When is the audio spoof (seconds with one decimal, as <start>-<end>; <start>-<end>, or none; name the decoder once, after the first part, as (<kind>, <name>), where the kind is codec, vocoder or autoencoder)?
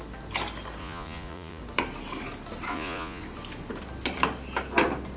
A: 0.8-1.6 (vocoder, Vocos); 2.7-3.2